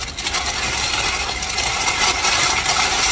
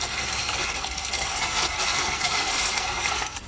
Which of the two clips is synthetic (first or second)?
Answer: second